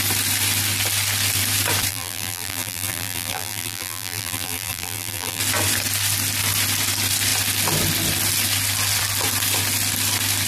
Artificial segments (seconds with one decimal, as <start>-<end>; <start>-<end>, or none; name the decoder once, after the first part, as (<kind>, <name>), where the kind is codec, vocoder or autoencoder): 1.9-5.4 (vocoder, BigVGAN v2)